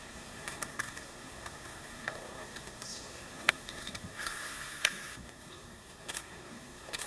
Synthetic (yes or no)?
yes